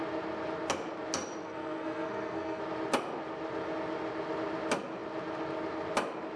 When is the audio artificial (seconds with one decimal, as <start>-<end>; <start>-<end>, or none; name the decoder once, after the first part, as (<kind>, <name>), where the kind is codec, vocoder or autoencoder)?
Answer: 1.4-2.6 (codec, SNAC)